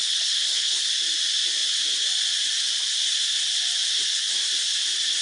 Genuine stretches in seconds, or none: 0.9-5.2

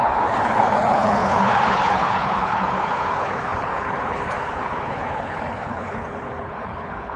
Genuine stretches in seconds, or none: none

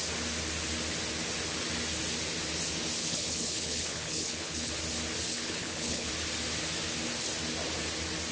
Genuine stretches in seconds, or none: 0.0-3.0; 4.7-5.3; 6.1-8.3

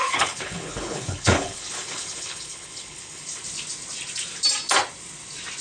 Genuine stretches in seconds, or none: 3.4-5.6

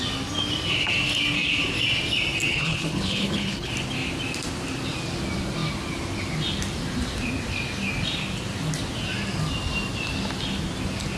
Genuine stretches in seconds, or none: 0.0-2.5; 3.7-11.2

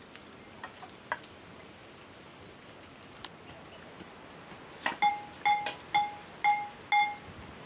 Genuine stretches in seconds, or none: 0.0-7.7

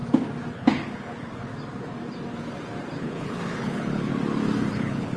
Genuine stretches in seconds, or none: 0.0-0.5; 1.5-3.0; 4.1-4.7

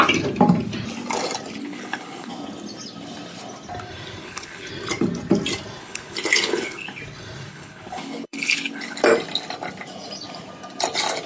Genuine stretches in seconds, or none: 0.0-1.6; 2.3-4.2; 4.7-5.8; 7.0-7.5; 9.0-11.3